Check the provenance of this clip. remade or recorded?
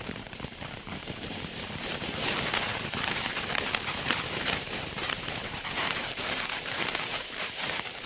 remade